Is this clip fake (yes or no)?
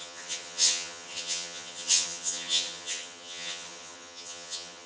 yes